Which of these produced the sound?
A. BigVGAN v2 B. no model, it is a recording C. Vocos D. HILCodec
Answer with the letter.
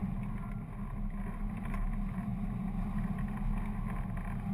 B